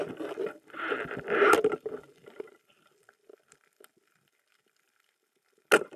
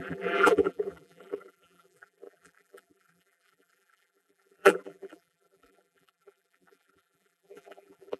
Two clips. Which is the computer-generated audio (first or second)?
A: second